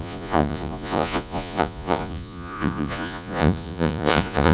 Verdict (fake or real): fake